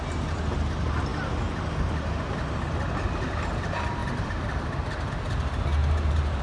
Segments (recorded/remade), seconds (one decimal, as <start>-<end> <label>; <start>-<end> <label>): 0.0-4.0 recorded; 4.0-5.1 remade; 5.1-5.8 recorded; 5.8-6.4 remade